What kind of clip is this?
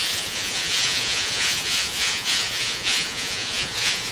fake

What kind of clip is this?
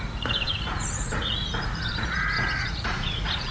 fake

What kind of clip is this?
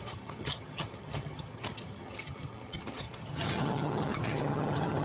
fake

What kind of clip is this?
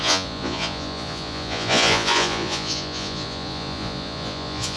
fake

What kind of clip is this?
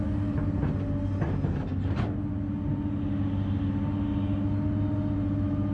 real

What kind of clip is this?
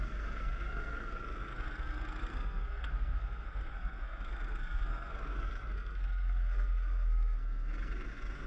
fake